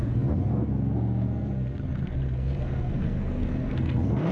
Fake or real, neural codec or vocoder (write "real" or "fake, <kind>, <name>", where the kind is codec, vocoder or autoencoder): fake, codec, SNAC